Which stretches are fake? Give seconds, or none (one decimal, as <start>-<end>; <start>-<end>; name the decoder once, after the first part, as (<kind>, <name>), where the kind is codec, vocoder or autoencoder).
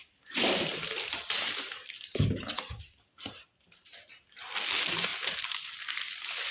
0.0-3.9 (vocoder, BigVGAN v2); 5.1-6.5